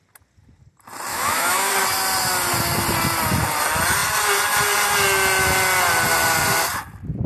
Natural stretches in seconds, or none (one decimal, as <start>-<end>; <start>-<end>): 0.0-1.1; 1.7-7.3